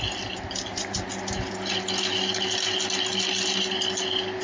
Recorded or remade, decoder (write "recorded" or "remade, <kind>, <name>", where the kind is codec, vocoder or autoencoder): recorded